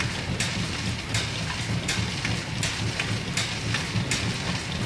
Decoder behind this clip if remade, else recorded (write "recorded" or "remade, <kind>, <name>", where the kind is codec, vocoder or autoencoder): recorded